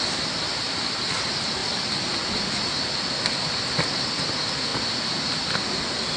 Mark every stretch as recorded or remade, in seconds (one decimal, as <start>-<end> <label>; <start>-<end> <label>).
0.0-6.2 recorded